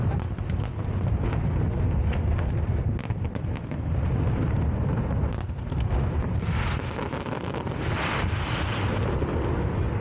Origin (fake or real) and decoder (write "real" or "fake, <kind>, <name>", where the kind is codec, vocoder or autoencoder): real